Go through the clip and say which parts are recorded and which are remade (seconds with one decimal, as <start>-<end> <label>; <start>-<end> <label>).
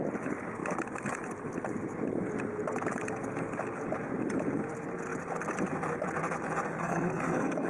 0.0-6.8 recorded; 6.8-7.7 remade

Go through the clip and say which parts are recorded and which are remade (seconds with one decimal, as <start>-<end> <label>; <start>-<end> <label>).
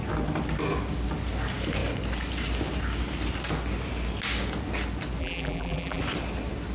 0.0-5.2 recorded; 5.2-6.0 remade; 6.0-6.7 recorded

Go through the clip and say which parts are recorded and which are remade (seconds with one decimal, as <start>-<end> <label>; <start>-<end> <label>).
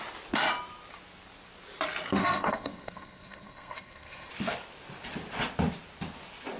0.0-2.2 recorded; 2.2-4.3 remade; 4.3-6.6 recorded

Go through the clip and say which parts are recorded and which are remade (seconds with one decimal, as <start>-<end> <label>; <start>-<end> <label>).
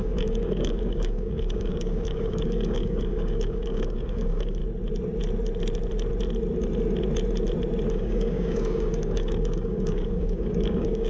0.0-4.6 remade; 4.6-7.9 recorded; 7.9-11.1 remade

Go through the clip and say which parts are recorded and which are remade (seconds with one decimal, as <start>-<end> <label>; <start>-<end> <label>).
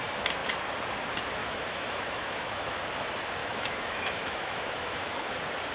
0.0-1.4 recorded; 1.4-2.8 remade; 2.8-3.4 recorded; 3.4-5.3 remade; 5.3-5.7 recorded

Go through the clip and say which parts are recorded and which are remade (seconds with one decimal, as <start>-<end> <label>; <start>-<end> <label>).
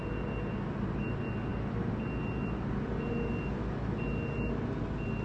0.0-5.2 recorded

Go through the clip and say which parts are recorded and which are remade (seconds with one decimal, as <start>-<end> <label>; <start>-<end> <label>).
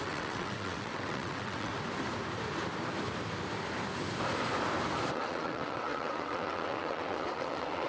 0.0-1.7 remade; 1.7-5.1 recorded; 5.1-7.9 remade